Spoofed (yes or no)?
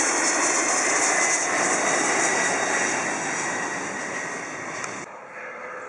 no